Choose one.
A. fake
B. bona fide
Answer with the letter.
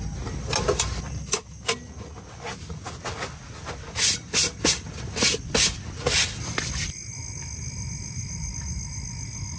B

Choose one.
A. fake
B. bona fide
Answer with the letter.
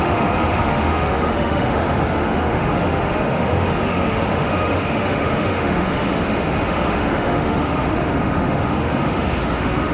A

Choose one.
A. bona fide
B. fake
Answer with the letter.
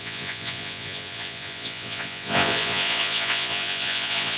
B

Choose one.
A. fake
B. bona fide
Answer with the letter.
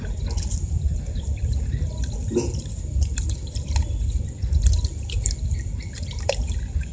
A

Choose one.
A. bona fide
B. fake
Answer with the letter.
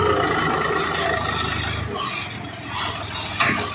A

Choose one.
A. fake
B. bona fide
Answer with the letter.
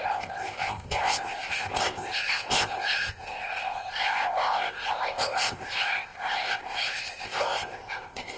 A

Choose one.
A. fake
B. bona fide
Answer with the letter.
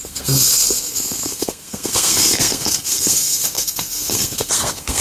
A